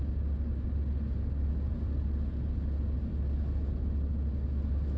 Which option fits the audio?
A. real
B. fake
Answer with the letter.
A